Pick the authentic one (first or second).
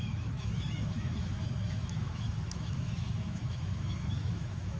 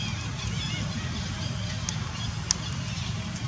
second